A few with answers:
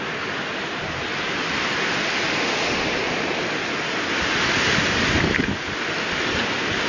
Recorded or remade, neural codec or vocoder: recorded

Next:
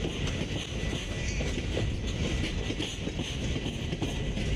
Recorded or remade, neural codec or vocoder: recorded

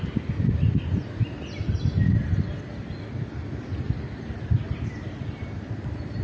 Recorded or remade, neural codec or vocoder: recorded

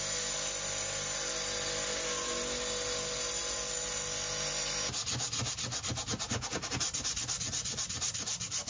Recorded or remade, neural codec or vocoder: recorded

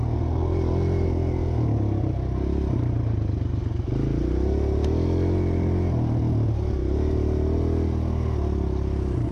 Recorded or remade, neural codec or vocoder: recorded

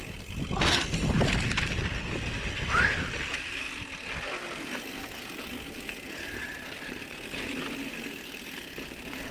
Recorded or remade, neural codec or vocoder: recorded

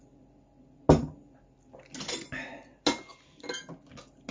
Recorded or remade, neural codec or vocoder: recorded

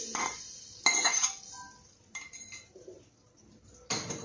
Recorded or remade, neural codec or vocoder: recorded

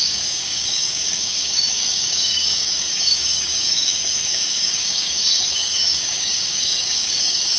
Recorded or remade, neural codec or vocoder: remade, codec, DAC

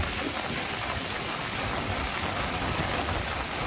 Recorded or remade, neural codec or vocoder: recorded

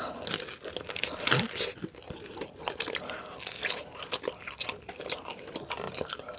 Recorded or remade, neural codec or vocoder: recorded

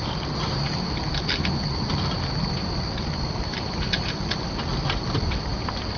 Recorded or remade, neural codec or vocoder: recorded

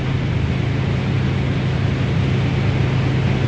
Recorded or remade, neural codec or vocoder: recorded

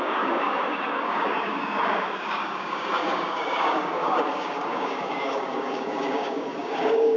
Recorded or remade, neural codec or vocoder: remade, codec, DAC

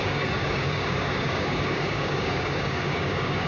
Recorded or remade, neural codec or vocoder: remade, codec, DAC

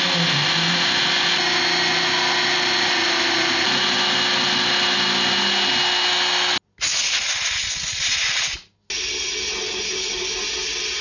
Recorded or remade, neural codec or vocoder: recorded